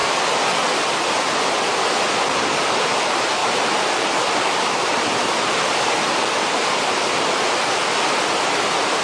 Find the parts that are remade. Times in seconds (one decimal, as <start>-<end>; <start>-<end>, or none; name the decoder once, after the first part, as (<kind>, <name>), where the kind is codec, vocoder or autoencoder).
none